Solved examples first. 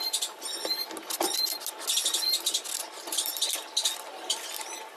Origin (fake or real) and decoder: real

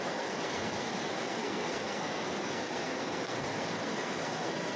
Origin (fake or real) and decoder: fake, codec, SNAC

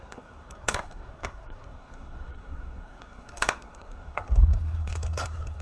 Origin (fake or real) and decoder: fake, codec, SNAC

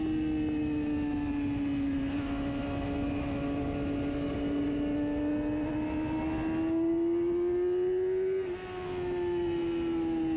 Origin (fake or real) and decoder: real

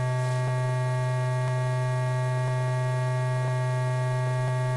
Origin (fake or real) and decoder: real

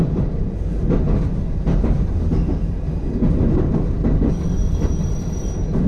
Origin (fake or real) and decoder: real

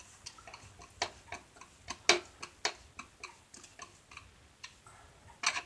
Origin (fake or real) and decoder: real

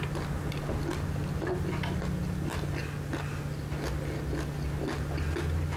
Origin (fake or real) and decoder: real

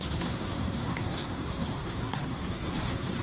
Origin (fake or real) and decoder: fake, codec, SNAC